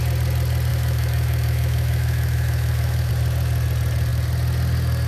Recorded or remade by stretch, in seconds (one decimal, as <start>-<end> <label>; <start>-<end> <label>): 0.0-0.7 recorded; 0.7-3.1 remade; 3.1-5.1 recorded